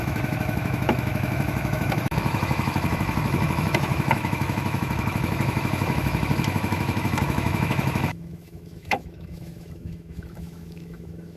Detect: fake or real fake